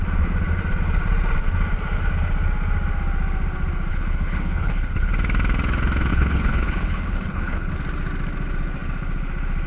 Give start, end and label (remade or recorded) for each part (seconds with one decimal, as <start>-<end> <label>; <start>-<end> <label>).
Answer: 0.0-3.9 recorded; 3.9-5.1 remade; 5.1-6.1 recorded; 6.1-7.7 remade; 7.7-9.7 recorded